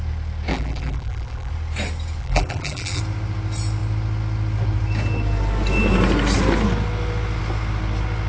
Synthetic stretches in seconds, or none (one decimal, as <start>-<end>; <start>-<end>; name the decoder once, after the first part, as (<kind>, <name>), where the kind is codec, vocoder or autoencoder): 0.5-1.5 (vocoder, BigVGAN v2); 2.2-3.0